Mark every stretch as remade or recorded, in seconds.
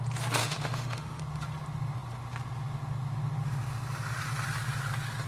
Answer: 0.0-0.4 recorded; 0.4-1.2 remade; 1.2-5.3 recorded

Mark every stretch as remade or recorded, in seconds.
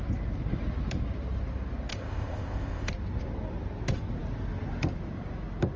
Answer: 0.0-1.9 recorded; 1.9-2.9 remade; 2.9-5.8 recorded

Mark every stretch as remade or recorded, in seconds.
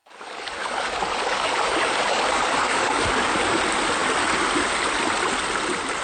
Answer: 0.0-3.6 remade; 3.6-6.0 recorded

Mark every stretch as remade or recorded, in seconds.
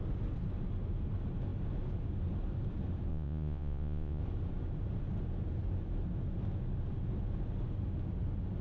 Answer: 0.0-3.1 recorded; 3.1-4.2 remade; 4.2-8.6 recorded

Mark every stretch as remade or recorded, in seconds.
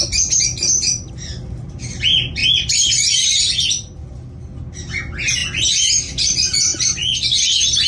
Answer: 0.0-2.4 recorded; 2.4-4.3 remade; 4.3-7.9 recorded